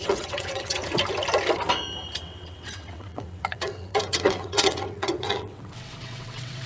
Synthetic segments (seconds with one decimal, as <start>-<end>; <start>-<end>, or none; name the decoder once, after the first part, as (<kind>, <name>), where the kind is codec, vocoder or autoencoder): 0.0-0.8 (vocoder, WaveNeXt); 2.2-6.7